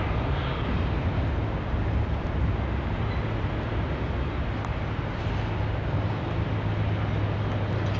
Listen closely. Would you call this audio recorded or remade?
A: recorded